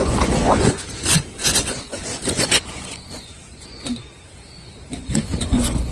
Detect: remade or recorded remade